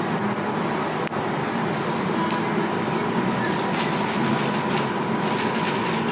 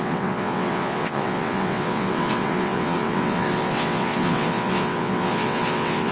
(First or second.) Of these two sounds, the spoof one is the second